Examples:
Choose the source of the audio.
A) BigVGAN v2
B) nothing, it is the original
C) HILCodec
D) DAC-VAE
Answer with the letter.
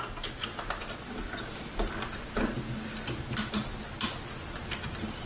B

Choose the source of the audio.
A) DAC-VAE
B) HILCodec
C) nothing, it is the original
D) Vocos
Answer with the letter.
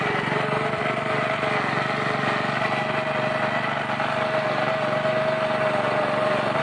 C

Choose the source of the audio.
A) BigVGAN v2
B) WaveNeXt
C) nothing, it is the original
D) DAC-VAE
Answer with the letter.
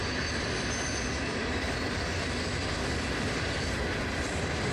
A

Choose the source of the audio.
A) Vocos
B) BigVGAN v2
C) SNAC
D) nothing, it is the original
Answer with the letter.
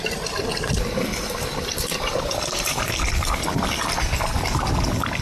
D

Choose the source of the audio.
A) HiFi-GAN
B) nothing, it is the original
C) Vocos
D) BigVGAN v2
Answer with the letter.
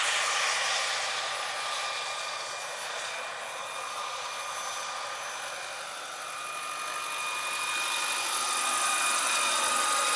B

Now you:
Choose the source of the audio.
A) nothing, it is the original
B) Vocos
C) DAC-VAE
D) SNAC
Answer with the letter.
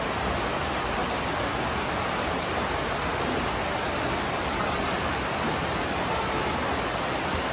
A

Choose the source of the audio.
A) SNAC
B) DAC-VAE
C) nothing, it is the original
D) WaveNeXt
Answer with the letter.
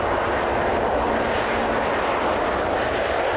C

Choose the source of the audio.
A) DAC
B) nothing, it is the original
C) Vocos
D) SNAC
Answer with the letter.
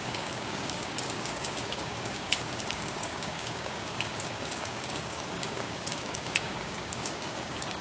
A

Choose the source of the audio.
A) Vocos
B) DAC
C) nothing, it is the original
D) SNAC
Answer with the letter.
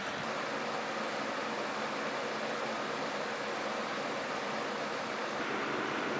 C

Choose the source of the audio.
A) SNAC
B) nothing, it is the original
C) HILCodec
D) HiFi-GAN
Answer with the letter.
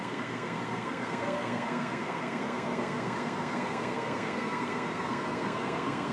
A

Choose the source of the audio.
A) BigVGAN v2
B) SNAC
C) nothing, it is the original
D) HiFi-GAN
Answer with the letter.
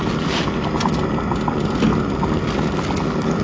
C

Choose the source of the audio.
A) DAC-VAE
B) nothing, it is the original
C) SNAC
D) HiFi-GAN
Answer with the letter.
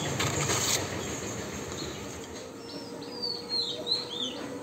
B